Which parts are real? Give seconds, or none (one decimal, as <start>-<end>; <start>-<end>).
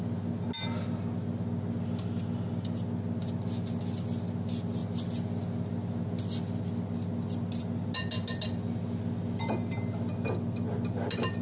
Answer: 0.0-11.4